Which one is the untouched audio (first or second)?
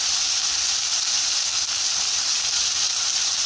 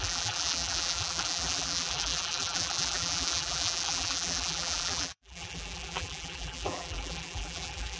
first